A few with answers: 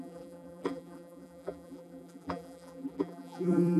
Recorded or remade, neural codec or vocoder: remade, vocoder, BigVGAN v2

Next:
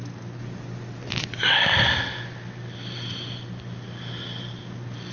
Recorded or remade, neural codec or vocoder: recorded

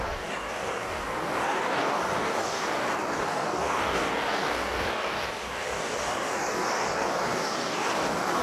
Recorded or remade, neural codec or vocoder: remade, codec, DAC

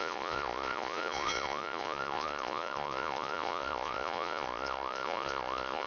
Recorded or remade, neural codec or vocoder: remade, vocoder, Vocos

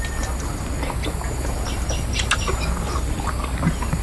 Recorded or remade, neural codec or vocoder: recorded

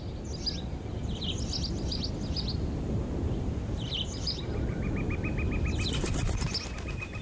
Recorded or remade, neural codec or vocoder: recorded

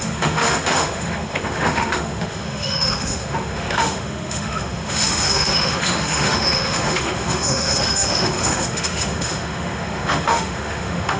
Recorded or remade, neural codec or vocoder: remade, autoencoder, DAC-VAE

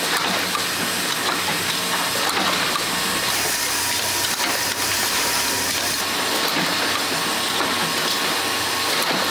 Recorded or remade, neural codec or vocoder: recorded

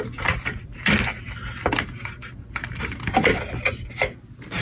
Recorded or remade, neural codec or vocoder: recorded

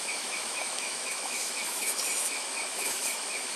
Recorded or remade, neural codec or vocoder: remade, autoencoder, DAC-VAE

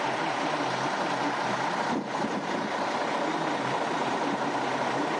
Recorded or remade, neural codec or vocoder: recorded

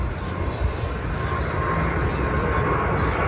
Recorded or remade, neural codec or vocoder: recorded